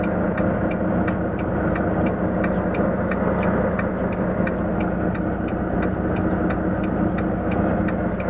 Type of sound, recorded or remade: recorded